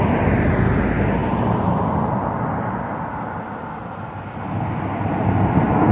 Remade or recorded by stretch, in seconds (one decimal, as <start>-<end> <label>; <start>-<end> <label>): 0.0-5.9 recorded